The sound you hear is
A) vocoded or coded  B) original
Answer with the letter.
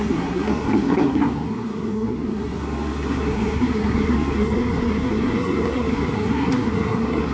A